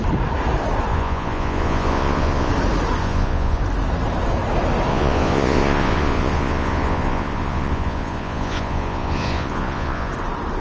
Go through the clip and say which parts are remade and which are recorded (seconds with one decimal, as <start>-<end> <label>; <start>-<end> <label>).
0.0-0.9 recorded; 0.9-2.5 remade; 2.5-3.0 recorded; 3.0-3.6 remade; 3.6-4.9 recorded; 4.9-10.1 remade; 10.1-10.6 recorded